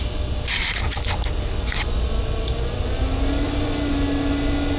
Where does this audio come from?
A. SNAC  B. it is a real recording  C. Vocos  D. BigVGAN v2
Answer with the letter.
B